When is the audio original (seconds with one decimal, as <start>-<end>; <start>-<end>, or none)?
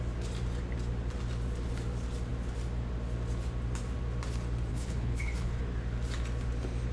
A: 0.0-4.7; 5.6-6.9